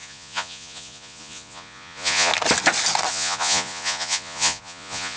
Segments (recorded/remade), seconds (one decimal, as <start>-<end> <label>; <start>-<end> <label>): 0.0-2.3 remade; 2.3-3.1 recorded; 3.1-5.2 remade